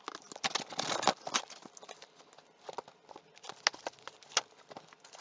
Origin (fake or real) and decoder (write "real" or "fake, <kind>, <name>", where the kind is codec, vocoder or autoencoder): real